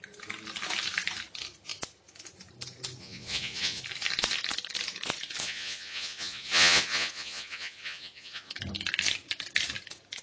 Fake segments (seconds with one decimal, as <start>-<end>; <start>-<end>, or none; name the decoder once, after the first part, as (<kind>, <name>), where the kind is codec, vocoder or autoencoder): 3.0-3.8 (vocoder, Vocos); 5.4-8.5